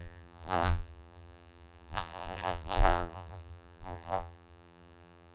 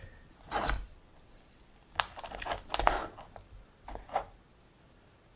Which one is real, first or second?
second